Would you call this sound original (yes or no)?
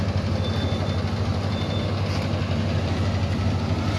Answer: yes